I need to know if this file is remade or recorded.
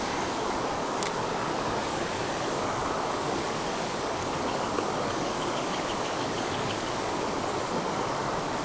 remade